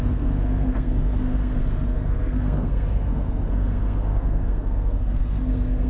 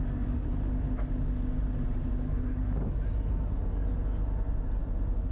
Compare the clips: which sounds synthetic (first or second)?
first